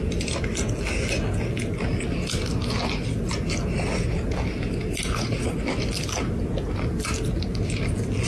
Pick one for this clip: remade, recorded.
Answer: recorded